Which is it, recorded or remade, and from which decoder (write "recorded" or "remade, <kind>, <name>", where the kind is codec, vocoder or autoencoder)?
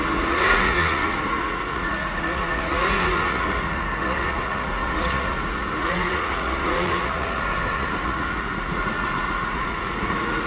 remade, vocoder, Vocos